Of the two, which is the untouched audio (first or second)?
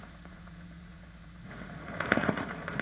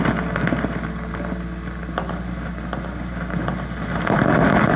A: second